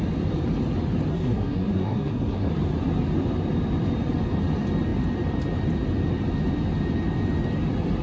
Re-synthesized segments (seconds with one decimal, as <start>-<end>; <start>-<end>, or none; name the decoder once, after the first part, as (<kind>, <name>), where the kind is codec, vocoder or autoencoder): 1.1-2.5 (codec, SNAC)